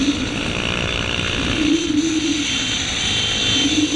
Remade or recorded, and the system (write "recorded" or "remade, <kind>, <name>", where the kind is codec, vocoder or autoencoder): recorded